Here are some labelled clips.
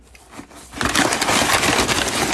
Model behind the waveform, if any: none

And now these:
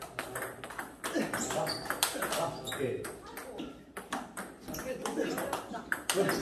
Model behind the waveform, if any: none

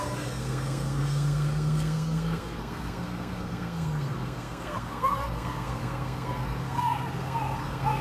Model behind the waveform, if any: codec, SNAC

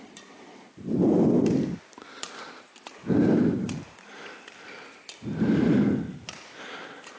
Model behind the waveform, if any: vocoder, BigVGAN v2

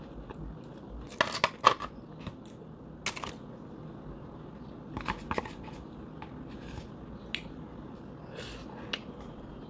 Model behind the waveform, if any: none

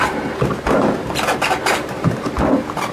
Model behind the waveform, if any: vocoder, BigVGAN v2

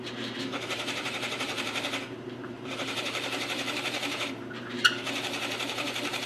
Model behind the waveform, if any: vocoder, BigVGAN v2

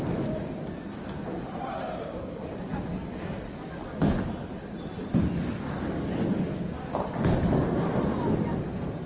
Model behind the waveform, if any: none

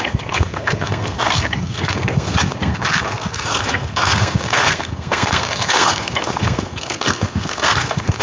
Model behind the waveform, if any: codec, SNAC